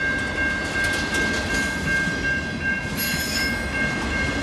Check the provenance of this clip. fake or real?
real